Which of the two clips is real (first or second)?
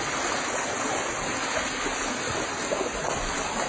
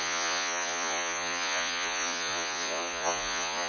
first